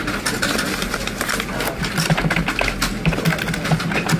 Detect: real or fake real